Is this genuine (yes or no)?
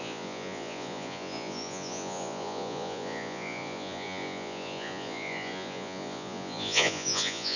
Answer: no